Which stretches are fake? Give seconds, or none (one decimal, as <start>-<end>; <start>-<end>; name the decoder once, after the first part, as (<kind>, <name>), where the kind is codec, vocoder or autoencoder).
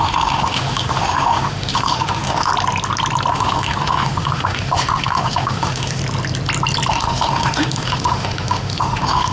0.0-2.5 (autoencoder, DAC-VAE); 3.3-6.0; 6.9-9.3